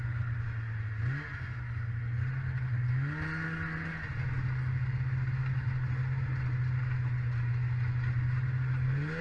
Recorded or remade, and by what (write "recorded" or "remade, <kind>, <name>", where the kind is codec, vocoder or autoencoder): recorded